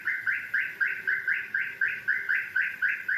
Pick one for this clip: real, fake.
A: real